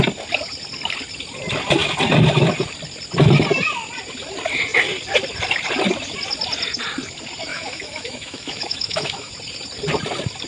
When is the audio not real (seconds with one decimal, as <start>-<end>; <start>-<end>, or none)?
7.5-9.3